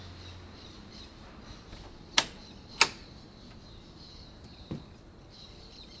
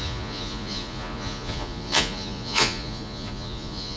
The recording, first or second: first